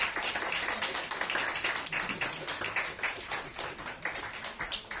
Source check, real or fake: fake